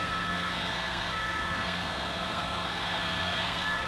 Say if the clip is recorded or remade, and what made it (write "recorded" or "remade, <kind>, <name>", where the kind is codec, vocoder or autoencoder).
remade, codec, SNAC